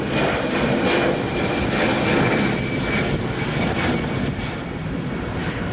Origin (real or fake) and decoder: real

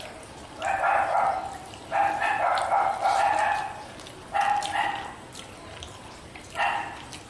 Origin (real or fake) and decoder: real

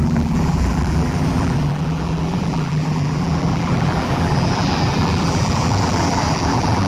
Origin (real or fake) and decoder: fake, vocoder, BigVGAN v2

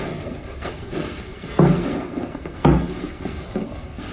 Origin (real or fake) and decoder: fake, codec, SNAC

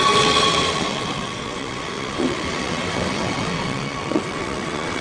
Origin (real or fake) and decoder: fake, vocoder, WaveNeXt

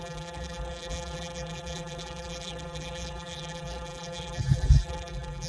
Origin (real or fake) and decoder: fake, vocoder, BigVGAN v2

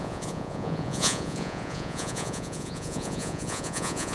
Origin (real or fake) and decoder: fake, vocoder, Vocos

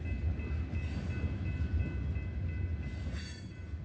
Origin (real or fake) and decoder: real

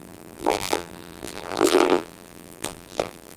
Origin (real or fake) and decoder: fake, vocoder, BigVGAN v2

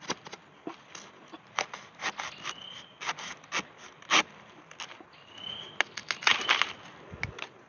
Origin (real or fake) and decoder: real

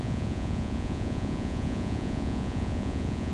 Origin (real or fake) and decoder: fake, vocoder, Vocos